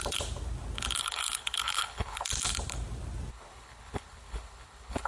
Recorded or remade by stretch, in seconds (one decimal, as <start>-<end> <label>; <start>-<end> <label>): 0.0-1.0 recorded; 1.0-2.3 remade; 2.3-3.3 recorded; 3.3-5.1 remade